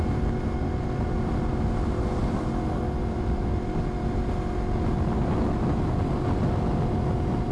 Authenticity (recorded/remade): recorded